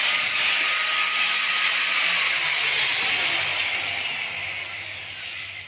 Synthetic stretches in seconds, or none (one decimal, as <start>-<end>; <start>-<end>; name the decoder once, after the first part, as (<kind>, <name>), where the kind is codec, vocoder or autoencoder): none